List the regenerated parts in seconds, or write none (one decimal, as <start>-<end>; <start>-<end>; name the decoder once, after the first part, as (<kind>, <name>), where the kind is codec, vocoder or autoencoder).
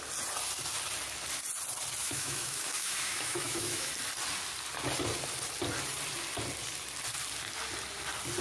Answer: 2.0-3.9 (autoencoder, DAC-VAE)